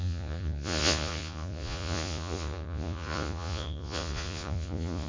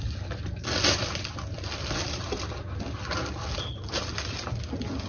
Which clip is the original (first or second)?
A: second